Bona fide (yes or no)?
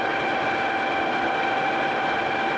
yes